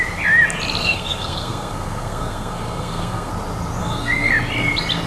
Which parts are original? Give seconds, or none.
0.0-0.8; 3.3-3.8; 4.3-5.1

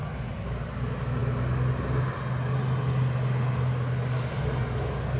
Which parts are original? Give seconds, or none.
0.0-5.2